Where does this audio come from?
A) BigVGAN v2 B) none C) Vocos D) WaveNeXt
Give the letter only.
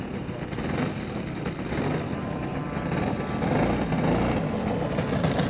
B